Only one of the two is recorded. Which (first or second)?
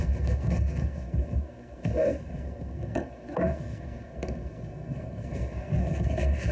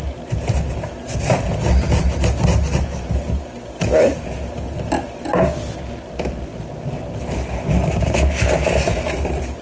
second